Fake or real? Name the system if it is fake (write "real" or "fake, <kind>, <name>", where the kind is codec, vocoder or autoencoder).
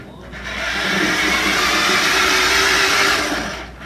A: real